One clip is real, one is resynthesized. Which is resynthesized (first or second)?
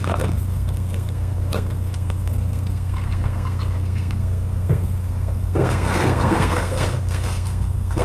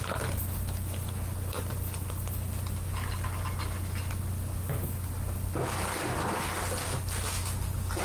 first